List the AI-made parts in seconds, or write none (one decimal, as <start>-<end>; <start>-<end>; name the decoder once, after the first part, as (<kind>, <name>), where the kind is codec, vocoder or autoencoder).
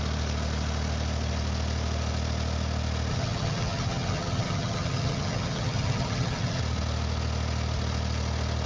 3.1-6.6 (vocoder, HiFi-GAN)